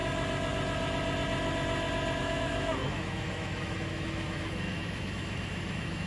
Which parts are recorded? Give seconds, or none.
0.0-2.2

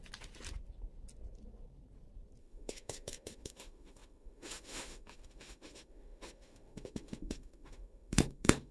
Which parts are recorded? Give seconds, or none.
0.0-2.4

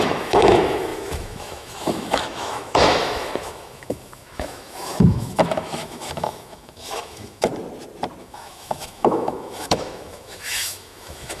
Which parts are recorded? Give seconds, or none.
7.5-8.2

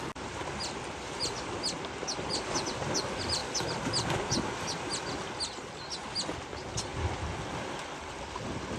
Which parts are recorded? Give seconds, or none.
0.0-8.8

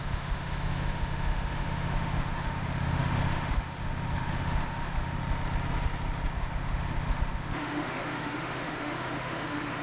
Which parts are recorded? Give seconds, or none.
5.2-6.3